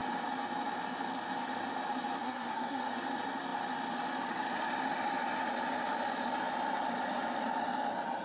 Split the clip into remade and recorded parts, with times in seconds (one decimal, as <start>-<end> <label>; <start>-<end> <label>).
0.0-2.2 recorded; 2.2-2.9 remade; 2.9-8.2 recorded

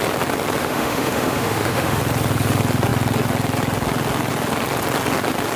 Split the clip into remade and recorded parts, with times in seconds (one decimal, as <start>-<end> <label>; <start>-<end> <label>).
0.0-0.6 recorded; 0.6-2.0 remade; 2.0-5.6 recorded